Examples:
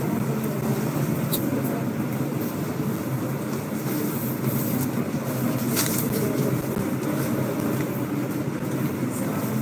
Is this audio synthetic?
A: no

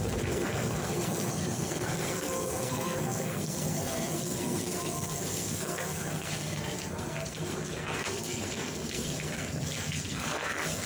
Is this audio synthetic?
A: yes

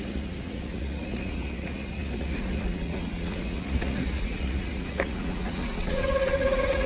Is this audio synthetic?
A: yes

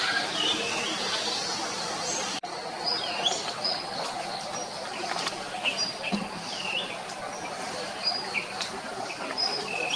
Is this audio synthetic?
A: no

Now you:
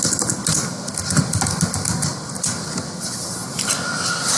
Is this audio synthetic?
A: no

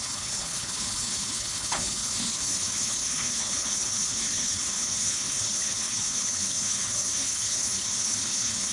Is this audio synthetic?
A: yes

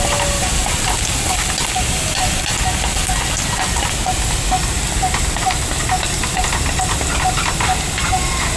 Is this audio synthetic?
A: no